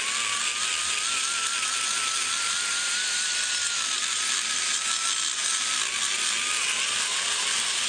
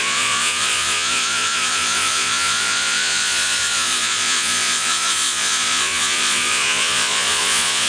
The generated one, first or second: second